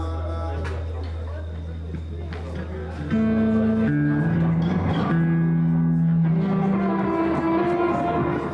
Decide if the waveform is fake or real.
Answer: real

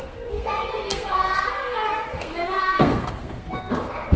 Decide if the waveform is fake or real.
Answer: fake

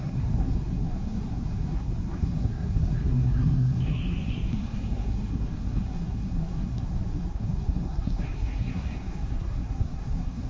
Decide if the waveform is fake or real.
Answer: fake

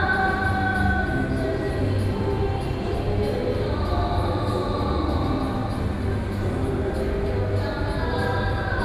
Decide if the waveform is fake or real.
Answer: real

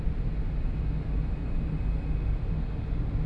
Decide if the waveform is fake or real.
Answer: real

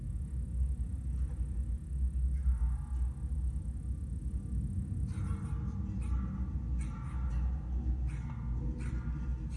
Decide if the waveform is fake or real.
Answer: real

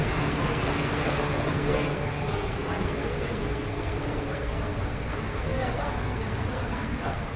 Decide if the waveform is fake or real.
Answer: fake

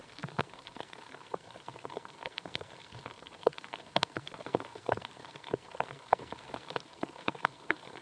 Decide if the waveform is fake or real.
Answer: fake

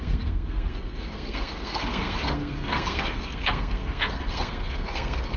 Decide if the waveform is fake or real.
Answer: fake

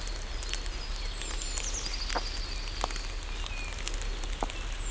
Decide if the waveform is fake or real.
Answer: real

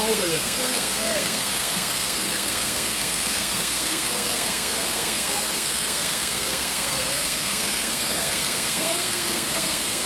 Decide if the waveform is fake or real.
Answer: fake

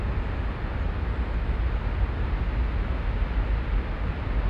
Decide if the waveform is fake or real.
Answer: real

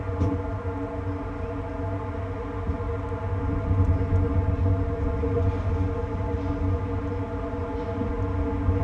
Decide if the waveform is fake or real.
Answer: real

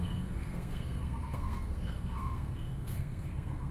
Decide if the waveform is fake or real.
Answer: fake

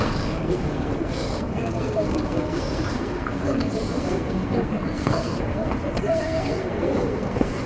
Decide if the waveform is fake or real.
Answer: fake